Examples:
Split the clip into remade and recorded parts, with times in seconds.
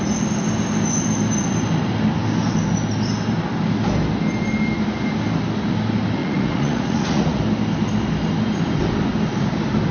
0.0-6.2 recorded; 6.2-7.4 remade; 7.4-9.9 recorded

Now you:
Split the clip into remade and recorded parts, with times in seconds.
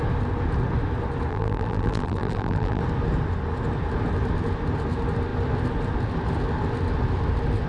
0.0-1.3 recorded; 1.3-2.8 remade; 2.8-7.7 recorded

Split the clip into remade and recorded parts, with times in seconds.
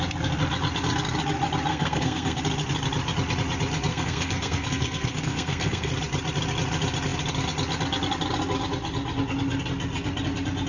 0.0-1.7 recorded; 1.7-2.4 remade; 2.4-3.9 recorded; 3.9-5.9 remade; 5.9-10.7 recorded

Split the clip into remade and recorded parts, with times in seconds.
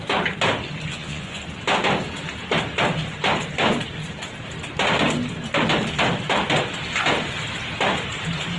0.0-0.9 recorded; 0.9-1.4 remade; 1.4-8.6 recorded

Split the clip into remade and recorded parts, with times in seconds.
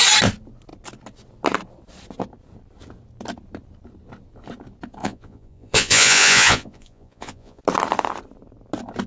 0.0-5.0 recorded; 5.0-7.6 remade; 7.6-9.1 recorded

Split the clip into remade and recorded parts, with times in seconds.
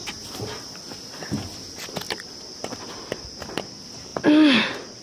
0.0-5.0 recorded